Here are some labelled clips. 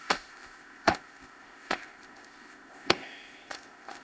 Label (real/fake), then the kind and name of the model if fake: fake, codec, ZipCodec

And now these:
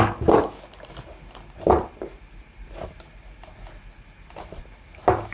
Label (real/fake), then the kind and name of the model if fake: real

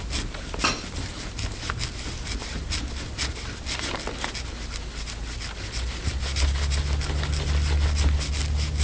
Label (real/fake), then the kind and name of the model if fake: real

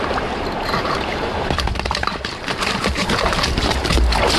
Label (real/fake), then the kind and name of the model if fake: fake, vocoder, BigVGAN v2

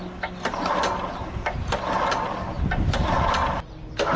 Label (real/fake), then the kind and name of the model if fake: real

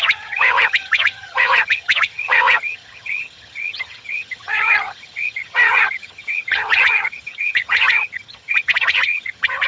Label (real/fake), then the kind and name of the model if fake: fake, vocoder, HiFi-GAN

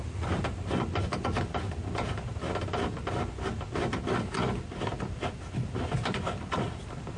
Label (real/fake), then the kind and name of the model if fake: real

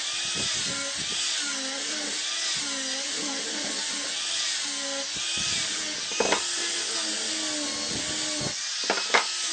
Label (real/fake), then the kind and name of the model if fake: real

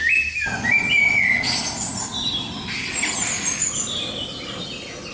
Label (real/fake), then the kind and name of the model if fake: real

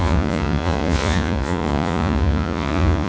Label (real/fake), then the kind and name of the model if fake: fake, vocoder, Vocos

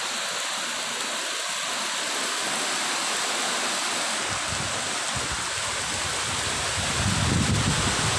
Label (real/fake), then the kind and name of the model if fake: real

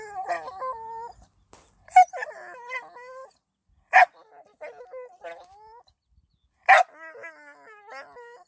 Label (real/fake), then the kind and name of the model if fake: real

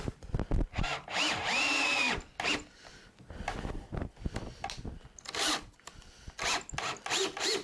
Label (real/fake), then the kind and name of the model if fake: real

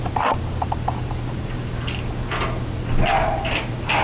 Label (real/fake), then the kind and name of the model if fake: real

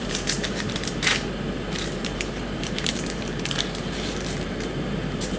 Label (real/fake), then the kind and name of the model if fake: fake, vocoder, BigVGAN v2